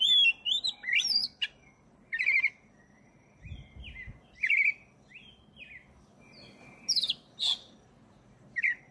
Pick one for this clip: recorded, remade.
recorded